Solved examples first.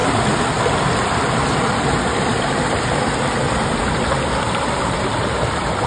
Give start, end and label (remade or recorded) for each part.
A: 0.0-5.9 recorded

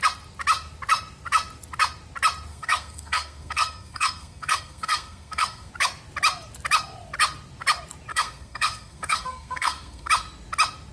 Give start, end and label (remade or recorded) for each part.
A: 0.0-2.5 recorded; 2.5-5.7 remade; 5.7-8.1 recorded; 8.1-10.1 remade; 10.1-10.9 recorded